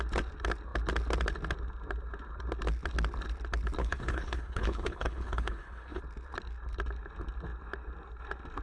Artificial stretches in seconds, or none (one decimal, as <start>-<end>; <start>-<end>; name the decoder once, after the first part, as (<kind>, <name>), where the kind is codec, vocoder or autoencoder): 3.8-6.0 (codec, HILCodec)